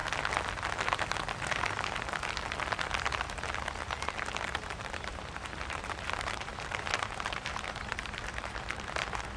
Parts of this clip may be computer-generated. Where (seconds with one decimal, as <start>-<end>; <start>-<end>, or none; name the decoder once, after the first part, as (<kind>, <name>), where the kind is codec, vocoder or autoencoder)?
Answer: 4.4-9.4 (vocoder, BigVGAN v2)